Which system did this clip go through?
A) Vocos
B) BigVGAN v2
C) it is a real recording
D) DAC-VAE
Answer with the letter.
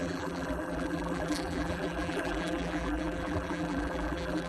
B